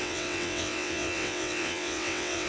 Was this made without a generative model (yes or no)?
no